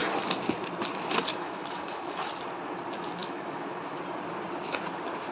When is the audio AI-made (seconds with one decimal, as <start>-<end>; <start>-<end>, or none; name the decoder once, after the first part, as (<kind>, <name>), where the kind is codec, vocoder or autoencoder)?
1.3-2.3 (autoencoder, DAC-VAE); 3.2-4.0